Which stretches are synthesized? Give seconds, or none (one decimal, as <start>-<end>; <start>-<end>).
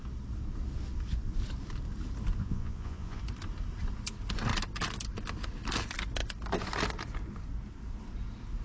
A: 2.4-3.2